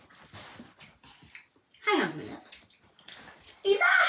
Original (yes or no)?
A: no